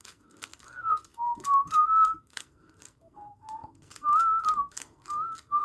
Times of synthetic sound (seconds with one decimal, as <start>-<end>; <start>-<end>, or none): 0.0-5.6

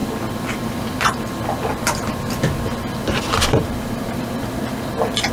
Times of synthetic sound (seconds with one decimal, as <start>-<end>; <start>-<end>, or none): 0.0-5.3